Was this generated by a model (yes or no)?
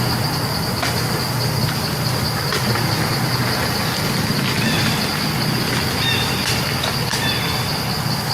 no